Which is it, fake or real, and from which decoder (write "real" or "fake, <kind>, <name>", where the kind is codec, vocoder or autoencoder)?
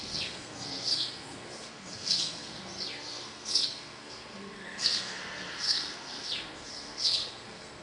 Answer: fake, codec, SNAC